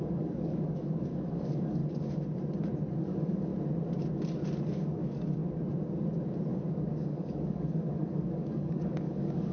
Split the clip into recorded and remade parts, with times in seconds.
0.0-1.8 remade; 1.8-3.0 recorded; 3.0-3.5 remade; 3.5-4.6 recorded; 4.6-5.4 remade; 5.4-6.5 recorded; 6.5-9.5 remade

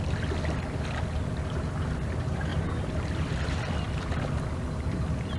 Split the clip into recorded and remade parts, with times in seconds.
0.0-2.5 recorded; 2.5-3.3 remade; 3.3-5.4 recorded

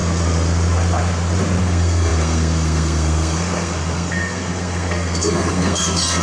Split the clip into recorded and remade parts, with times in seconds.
0.0-1.6 recorded; 1.6-6.2 remade

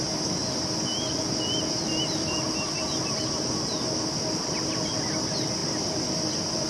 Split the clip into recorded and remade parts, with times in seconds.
0.0-6.7 recorded

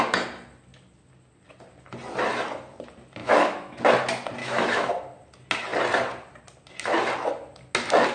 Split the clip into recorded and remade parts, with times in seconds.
0.0-3.2 recorded; 3.2-3.8 remade; 3.8-4.4 recorded; 4.4-4.9 remade; 4.9-8.1 recorded

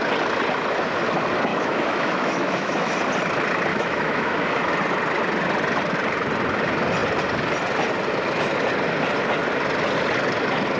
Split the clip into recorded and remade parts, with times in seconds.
0.0-1.5 recorded; 1.5-3.0 remade; 3.0-3.7 recorded; 3.7-4.7 remade; 4.7-10.8 recorded

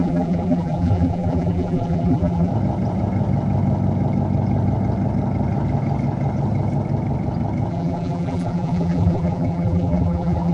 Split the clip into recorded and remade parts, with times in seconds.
0.0-2.5 remade; 2.5-7.7 recorded; 7.7-10.5 remade

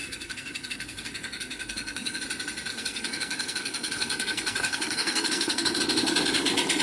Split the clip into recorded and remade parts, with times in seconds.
0.0-2.2 remade; 2.2-2.7 recorded; 2.7-5.8 remade; 5.8-6.8 recorded